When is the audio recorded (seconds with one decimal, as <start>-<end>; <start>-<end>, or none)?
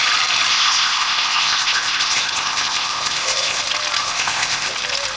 0.0-0.5; 3.6-4.0; 4.7-5.2